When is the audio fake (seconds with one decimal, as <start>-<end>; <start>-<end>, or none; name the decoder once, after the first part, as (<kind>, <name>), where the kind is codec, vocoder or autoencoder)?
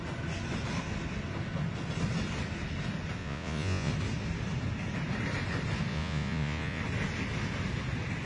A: 3.2-3.9 (vocoder, Vocos); 5.9-6.8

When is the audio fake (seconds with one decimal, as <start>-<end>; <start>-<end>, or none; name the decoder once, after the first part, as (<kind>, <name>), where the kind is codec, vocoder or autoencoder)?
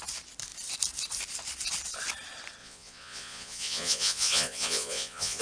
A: 2.6-5.4 (vocoder, Vocos)